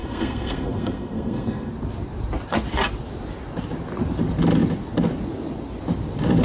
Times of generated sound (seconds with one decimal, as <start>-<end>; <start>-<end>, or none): 0.0-1.7